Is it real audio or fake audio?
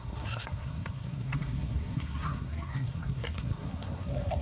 fake